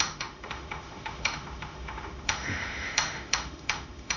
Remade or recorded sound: remade